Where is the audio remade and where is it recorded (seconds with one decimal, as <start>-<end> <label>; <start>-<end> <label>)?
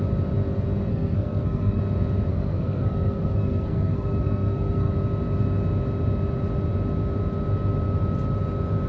0.0-0.9 recorded; 0.9-1.8 remade; 1.8-2.3 recorded; 2.3-4.9 remade; 4.9-8.9 recorded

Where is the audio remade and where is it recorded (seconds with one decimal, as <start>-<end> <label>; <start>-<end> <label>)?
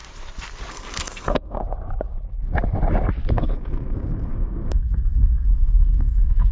0.0-0.7 recorded; 0.7-1.6 remade; 1.6-3.3 recorded; 3.3-6.5 remade